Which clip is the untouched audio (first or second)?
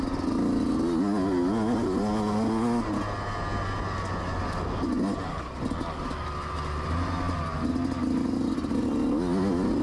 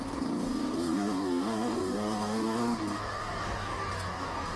first